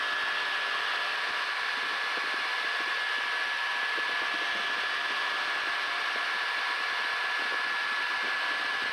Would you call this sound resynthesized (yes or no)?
no